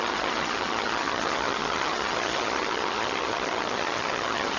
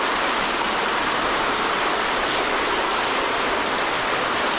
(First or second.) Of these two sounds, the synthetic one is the first